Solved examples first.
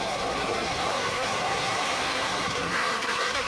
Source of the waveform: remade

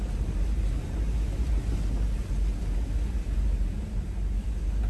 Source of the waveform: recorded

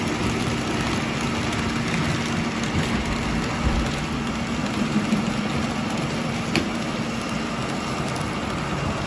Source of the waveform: recorded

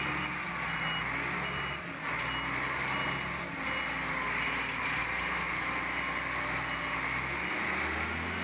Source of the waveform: recorded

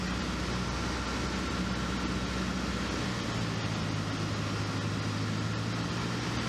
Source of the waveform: recorded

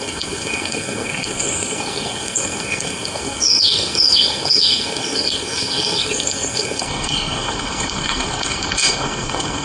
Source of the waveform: remade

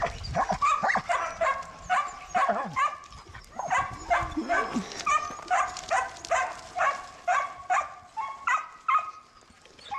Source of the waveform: recorded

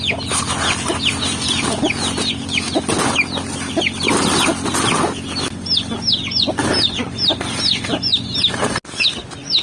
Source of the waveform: recorded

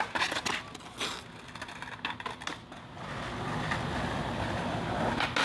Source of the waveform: recorded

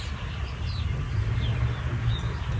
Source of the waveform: recorded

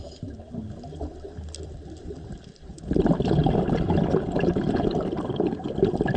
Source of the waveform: recorded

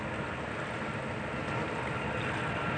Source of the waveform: recorded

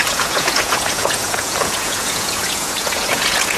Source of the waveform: remade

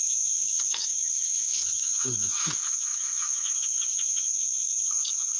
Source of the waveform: remade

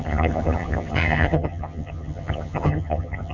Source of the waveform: remade